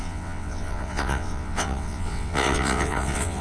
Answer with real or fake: fake